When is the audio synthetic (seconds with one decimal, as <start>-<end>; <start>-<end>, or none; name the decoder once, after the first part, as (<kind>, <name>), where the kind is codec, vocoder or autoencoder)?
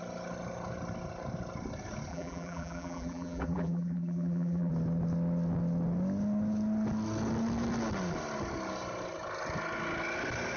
2.1-4.7 (vocoder, BigVGAN v2)